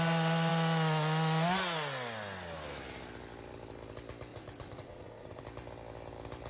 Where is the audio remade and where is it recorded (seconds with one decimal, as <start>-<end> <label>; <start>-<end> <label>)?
0.0-4.3 recorded; 4.3-5.4 remade; 5.4-6.5 recorded

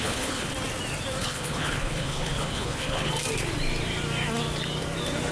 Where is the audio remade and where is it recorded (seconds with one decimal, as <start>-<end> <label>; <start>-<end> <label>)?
0.0-0.5 remade; 0.5-1.2 recorded; 1.2-3.1 remade; 3.1-5.3 recorded

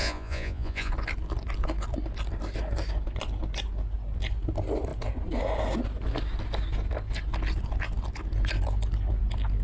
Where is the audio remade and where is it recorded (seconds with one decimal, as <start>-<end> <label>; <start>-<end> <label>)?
0.0-0.9 remade; 0.9-9.6 recorded

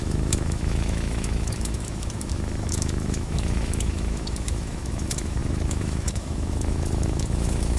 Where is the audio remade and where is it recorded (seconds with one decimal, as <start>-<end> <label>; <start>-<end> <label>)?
0.0-7.8 remade

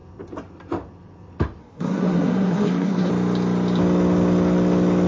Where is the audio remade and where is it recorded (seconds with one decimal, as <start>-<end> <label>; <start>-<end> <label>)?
0.0-1.6 recorded; 1.6-3.1 remade; 3.1-5.1 recorded